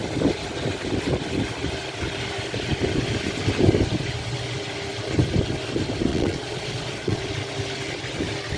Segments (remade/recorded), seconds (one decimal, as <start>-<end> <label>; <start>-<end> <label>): 0.0-6.1 recorded; 6.1-7.3 remade; 7.3-8.6 recorded